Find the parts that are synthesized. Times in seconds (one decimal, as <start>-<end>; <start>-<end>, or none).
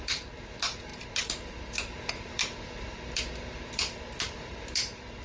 0.0-5.2